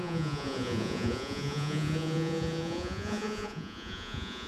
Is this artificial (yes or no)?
yes